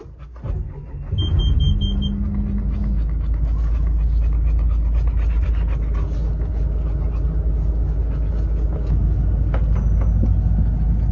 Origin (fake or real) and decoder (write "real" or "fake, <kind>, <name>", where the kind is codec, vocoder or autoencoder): real